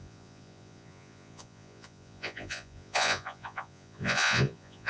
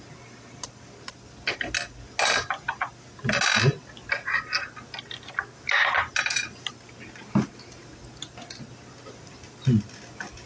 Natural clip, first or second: second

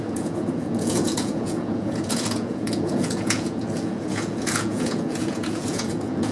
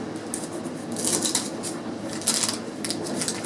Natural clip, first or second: second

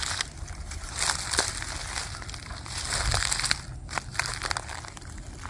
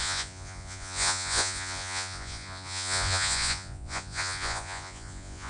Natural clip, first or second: first